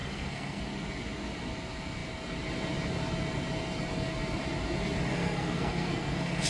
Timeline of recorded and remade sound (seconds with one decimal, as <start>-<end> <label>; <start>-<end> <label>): 0.0-0.6 remade; 0.6-5.1 recorded; 5.1-6.5 remade